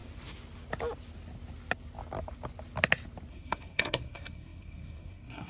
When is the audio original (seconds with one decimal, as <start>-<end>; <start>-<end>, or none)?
0.0-3.3